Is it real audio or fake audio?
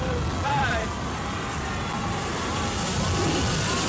real